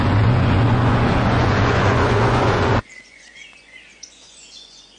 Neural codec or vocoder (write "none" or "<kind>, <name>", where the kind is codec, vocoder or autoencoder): vocoder, Vocos